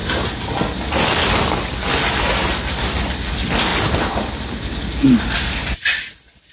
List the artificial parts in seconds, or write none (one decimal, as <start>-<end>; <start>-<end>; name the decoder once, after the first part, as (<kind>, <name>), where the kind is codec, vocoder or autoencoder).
none